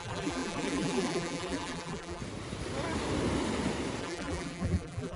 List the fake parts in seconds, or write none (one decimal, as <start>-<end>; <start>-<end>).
0.0-2.2; 4.0-5.2